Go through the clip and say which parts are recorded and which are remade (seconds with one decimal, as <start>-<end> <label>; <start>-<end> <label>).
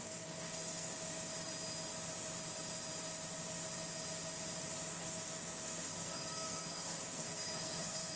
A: 0.0-0.9 remade; 0.9-4.9 recorded; 4.9-8.2 remade